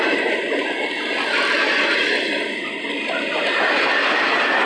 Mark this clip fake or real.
real